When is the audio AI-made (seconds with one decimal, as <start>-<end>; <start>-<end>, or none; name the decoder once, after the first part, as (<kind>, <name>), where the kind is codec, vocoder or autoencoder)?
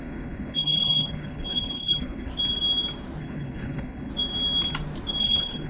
0.0-2.3 (codec, HILCodec); 3.2-4.1; 5.2-5.7